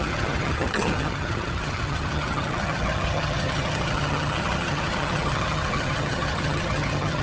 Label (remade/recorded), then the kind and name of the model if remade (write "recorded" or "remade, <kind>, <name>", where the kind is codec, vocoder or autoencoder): remade, vocoder, HiFi-GAN